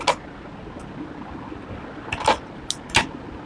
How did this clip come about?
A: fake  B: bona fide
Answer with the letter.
B